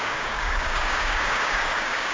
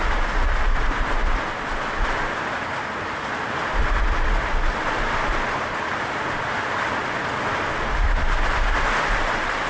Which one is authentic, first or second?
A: second